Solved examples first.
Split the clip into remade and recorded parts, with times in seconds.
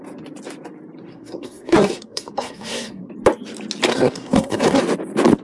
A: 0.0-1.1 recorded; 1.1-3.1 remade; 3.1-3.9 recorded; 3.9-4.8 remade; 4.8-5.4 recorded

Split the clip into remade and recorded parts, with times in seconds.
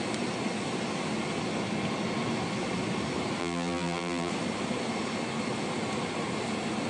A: 0.0-3.4 recorded; 3.4-4.3 remade; 4.3-6.9 recorded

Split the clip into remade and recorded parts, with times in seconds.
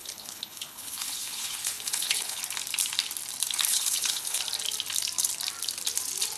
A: 0.0-2.4 remade; 2.4-3.7 recorded; 3.7-4.4 remade; 4.4-6.4 recorded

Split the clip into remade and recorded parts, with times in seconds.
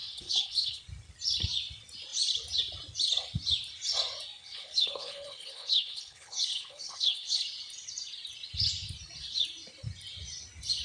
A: 0.0-0.8 remade; 0.8-4.4 recorded; 4.4-7.4 remade; 7.4-10.8 recorded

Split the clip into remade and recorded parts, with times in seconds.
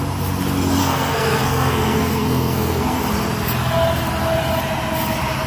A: 0.0-0.8 recorded; 0.8-3.0 remade; 3.0-5.5 recorded